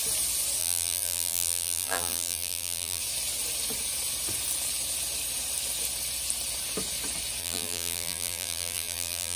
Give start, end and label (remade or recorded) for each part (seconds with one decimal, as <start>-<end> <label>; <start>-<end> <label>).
0.0-0.6 recorded; 0.6-3.0 remade; 3.0-7.4 recorded; 7.4-9.4 remade